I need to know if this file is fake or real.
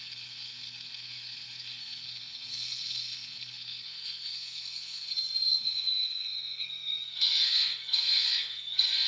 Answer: fake